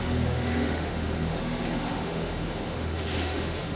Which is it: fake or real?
fake